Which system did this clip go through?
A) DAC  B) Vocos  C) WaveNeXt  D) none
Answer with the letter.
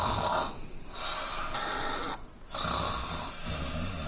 D